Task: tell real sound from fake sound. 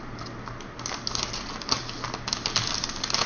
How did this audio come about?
real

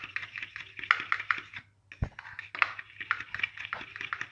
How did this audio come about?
real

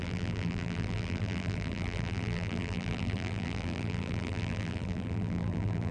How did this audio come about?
fake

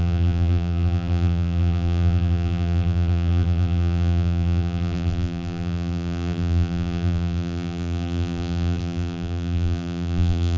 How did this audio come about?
fake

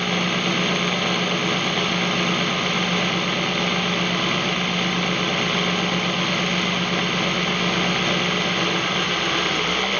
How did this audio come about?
real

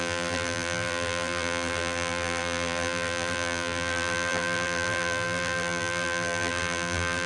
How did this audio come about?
fake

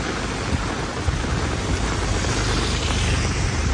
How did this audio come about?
fake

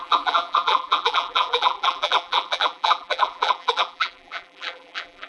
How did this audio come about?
fake